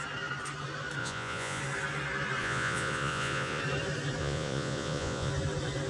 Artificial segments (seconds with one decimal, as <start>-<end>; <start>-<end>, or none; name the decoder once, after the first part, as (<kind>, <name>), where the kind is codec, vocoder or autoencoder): 1.0-1.6 (vocoder, Vocos); 2.4-3.6; 4.2-5.3